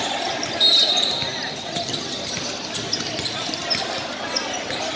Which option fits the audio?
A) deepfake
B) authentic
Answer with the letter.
B